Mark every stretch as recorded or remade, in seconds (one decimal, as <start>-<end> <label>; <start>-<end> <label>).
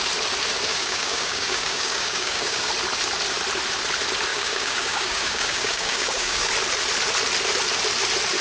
0.0-0.7 recorded; 0.7-2.7 remade; 2.7-4.3 recorded; 4.3-6.5 remade; 6.5-8.4 recorded